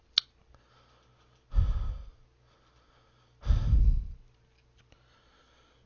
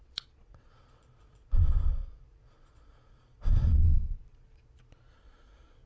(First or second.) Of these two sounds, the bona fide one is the first